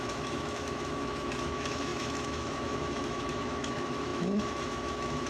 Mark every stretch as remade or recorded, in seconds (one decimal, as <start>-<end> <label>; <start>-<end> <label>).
0.0-5.3 remade